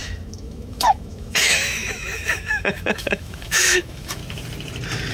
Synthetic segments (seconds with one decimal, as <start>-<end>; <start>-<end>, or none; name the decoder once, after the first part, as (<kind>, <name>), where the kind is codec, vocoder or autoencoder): 0.0-4.2 (autoencoder, DAC-VAE)